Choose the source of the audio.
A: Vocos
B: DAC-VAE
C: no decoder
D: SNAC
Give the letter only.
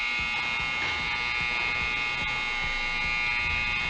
C